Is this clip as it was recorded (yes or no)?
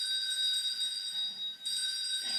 yes